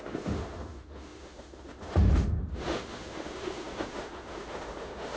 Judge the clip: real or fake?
fake